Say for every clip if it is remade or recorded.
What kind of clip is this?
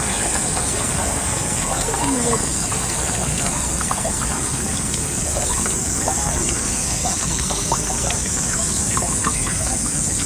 remade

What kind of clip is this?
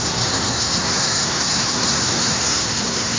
remade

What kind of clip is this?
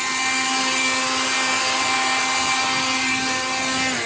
recorded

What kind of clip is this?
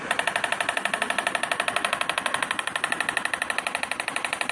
recorded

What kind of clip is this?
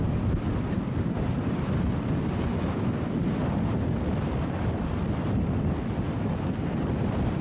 recorded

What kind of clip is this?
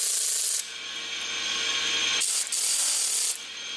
recorded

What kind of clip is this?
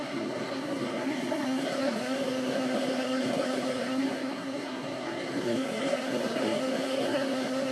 remade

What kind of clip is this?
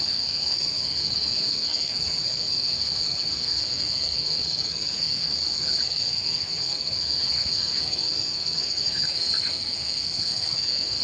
remade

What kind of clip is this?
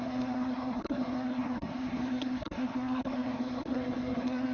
remade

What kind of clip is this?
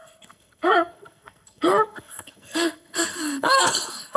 remade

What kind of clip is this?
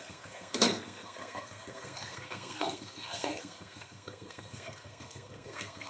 remade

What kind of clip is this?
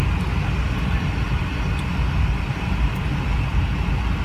recorded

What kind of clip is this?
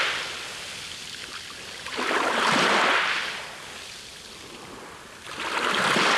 recorded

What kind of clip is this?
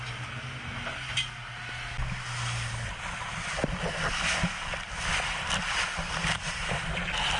recorded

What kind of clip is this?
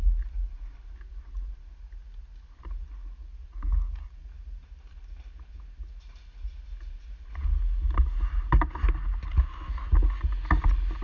recorded